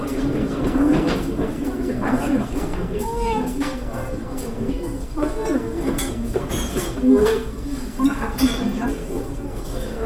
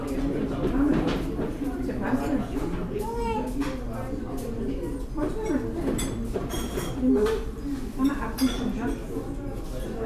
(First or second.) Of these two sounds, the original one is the second